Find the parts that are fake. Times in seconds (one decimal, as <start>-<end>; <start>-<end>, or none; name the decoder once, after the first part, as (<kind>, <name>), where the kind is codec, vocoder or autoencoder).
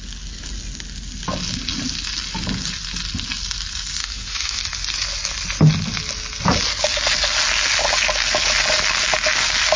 4.0-4.6 (autoencoder, DAC-VAE)